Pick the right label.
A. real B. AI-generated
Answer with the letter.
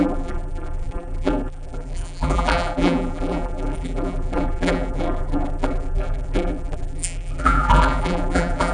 B